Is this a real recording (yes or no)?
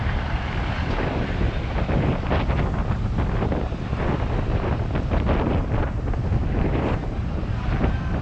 yes